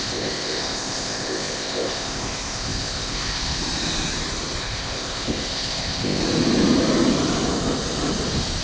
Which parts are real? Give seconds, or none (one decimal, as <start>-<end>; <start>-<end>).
3.6-4.6; 6.2-8.6